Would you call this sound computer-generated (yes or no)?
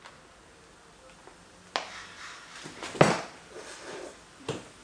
no